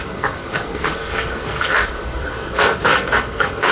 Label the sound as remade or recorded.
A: remade